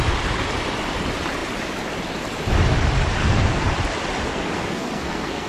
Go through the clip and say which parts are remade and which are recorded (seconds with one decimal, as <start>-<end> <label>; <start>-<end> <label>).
0.0-3.2 recorded; 3.2-3.7 remade; 3.7-4.3 recorded; 4.3-5.5 remade